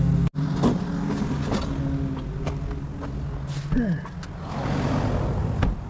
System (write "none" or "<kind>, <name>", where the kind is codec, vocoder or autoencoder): none